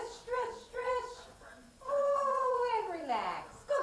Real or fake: fake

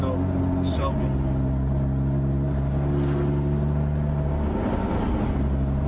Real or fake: real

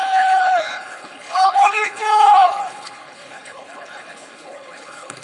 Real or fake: fake